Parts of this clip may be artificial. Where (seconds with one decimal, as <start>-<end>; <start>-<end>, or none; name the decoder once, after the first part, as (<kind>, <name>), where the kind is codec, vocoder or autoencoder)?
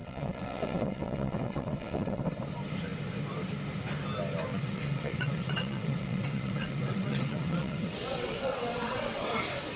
0.0-2.2 (vocoder, WaveNeXt); 4.5-9.3